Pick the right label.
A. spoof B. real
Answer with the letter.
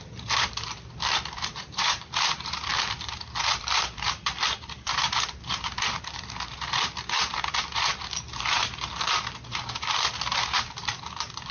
A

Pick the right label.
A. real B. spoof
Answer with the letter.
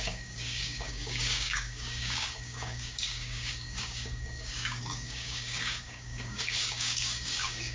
B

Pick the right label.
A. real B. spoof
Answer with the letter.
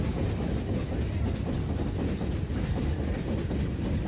A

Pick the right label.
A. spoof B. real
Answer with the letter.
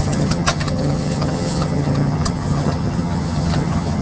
A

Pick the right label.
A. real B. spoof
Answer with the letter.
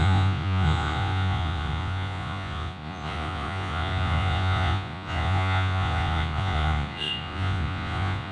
B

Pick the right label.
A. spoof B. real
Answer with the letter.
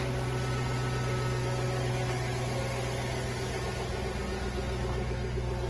B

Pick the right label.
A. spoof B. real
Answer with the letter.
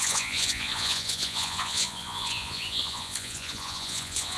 A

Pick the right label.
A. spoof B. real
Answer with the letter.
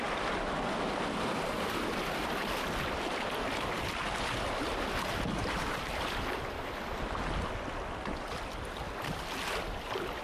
B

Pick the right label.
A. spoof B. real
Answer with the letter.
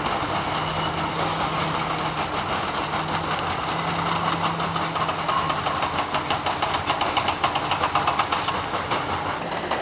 B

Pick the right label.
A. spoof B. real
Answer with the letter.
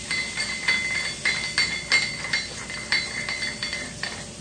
B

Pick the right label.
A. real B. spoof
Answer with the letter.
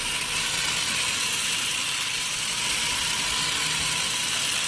A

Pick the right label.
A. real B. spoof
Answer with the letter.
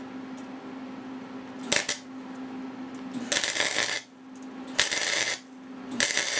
A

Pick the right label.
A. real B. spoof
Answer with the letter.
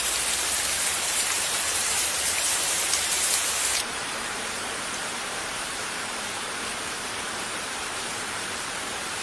B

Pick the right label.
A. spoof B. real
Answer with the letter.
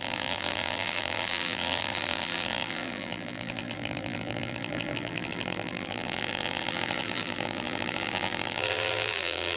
A